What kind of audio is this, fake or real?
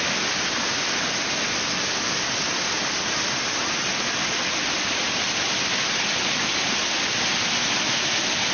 real